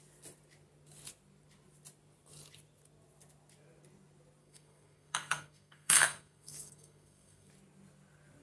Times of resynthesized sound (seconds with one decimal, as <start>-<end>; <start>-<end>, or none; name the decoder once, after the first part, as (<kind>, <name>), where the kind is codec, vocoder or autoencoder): 4.4-7.5 (codec, SNAC)